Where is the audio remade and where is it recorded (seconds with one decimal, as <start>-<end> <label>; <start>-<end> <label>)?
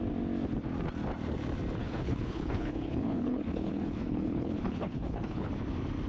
0.0-1.8 recorded; 1.8-5.5 remade; 5.5-6.1 recorded